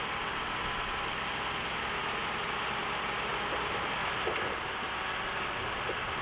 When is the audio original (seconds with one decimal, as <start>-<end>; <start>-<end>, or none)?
0.0-6.2